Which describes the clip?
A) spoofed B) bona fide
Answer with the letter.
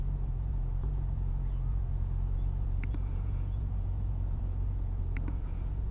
A